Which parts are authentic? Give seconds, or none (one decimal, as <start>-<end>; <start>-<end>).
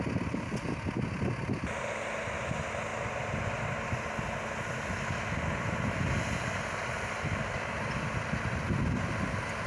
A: 0.0-9.7